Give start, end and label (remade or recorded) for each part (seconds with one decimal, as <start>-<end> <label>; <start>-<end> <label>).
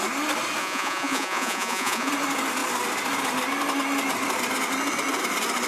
0.0-0.6 recorded; 0.6-2.1 remade; 2.1-5.7 recorded